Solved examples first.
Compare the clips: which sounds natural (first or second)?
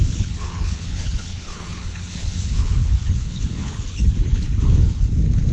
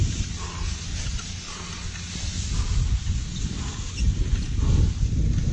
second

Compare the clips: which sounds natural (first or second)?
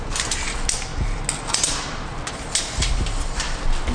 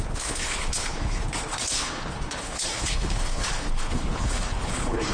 first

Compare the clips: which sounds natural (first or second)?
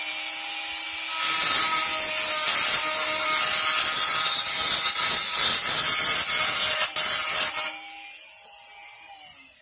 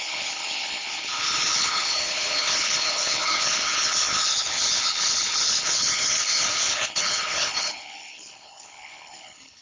first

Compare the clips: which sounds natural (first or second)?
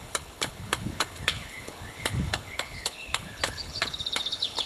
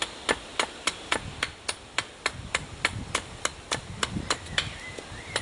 second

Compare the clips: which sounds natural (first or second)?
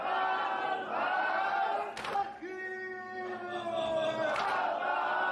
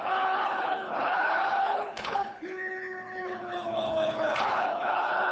first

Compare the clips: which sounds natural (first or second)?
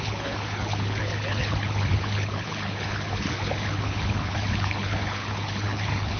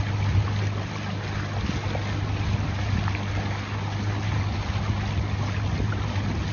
second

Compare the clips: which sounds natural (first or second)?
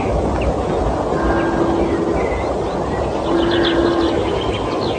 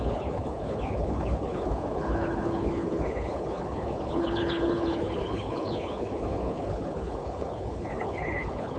first